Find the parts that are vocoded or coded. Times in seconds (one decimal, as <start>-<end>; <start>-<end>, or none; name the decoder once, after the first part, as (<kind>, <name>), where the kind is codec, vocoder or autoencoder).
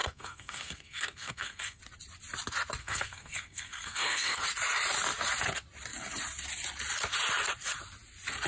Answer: 0.0-1.8 (codec, SNAC); 2.8-4.4